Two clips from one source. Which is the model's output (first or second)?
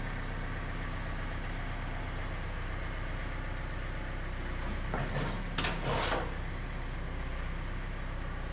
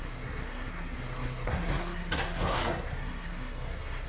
second